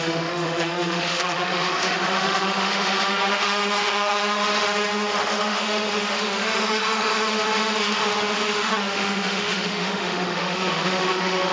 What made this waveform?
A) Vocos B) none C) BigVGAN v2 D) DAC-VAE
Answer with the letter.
D